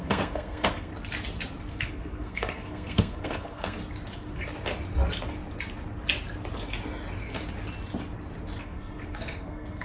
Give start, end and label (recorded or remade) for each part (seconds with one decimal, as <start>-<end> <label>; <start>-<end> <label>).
0.0-0.9 remade; 0.9-1.7 recorded; 1.7-3.8 remade; 3.8-8.6 recorded; 8.6-9.8 remade